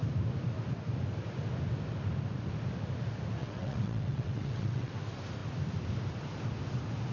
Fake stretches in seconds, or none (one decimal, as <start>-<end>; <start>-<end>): 3.4-4.9